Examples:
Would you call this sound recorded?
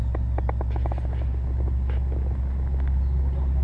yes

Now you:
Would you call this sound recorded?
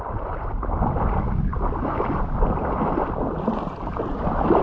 yes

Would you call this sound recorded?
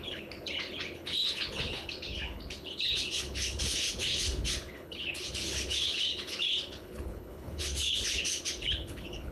no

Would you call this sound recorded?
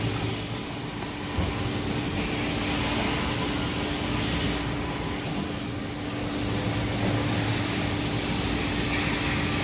yes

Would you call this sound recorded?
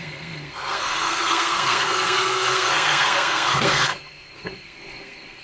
no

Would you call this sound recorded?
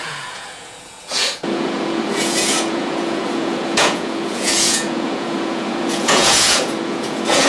no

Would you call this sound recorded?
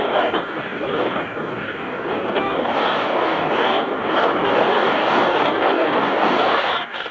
no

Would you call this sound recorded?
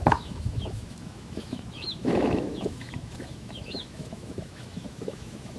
no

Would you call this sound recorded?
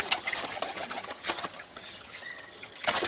no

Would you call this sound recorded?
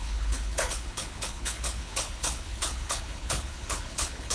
no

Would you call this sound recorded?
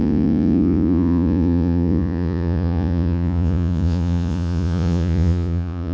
no